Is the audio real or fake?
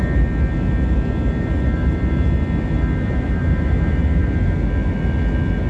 real